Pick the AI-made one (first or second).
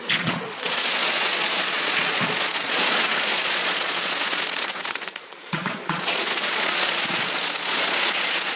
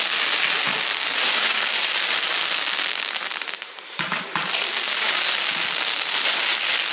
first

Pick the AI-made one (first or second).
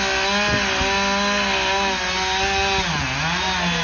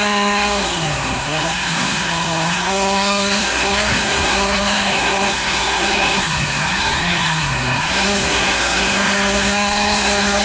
second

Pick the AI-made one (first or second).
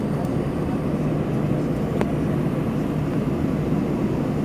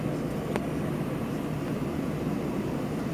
second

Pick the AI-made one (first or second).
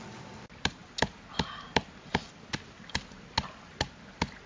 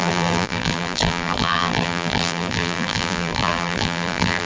second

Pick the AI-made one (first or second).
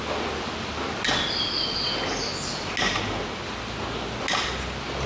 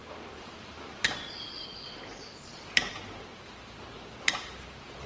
second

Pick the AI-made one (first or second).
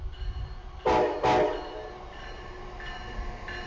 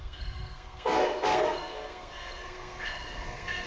second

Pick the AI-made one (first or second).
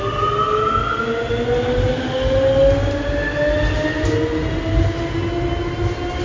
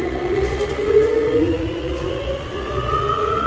second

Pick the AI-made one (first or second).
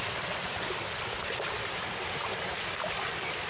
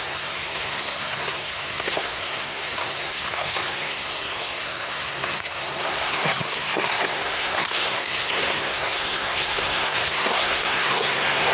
second